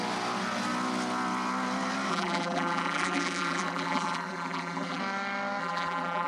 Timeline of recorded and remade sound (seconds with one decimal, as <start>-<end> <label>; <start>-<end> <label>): 0.0-2.1 recorded; 2.1-5.0 remade; 5.0-5.6 recorded; 5.6-6.3 remade